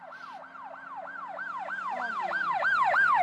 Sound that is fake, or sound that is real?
real